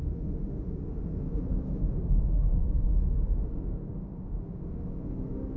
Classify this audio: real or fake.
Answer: fake